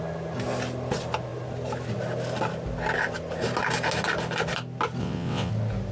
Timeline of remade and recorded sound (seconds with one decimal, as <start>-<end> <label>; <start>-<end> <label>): 0.0-5.0 recorded; 5.0-5.5 remade; 5.5-5.9 recorded